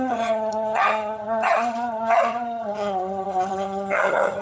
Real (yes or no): no